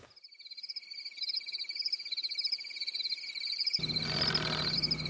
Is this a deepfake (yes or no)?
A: no